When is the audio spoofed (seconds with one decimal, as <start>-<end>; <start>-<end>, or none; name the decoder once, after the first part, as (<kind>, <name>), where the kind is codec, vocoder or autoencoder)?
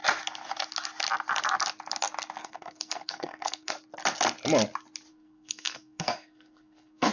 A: 2.4-3.7 (codec, SNAC); 5.1-7.1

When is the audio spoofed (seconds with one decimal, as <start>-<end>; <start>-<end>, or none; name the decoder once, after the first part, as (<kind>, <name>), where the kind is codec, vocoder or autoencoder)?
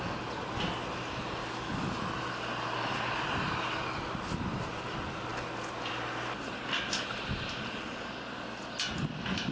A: 1.4-2.2 (autoencoder, DAC-VAE)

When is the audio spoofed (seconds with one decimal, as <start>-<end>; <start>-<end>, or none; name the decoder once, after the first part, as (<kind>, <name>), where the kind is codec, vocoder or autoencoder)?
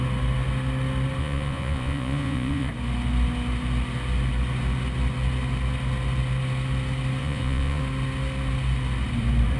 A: 1.2-2.7 (vocoder, Vocos); 7.2-7.8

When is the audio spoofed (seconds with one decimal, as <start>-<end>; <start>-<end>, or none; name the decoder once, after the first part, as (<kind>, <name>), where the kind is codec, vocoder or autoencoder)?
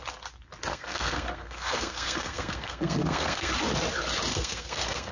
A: 0.7-3.5 (codec, SNAC); 4.3-5.1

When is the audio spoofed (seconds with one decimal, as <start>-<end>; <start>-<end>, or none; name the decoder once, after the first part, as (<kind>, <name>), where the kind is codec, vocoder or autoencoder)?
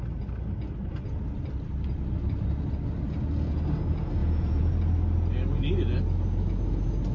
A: 4.2-4.7 (vocoder, Vocos)